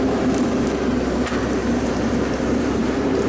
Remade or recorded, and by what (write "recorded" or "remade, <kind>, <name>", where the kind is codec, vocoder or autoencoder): remade, vocoder, BigVGAN v2